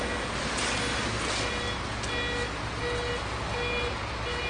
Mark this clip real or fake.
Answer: real